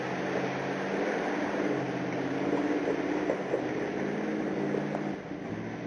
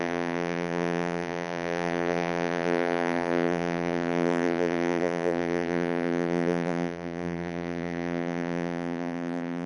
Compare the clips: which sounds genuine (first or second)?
first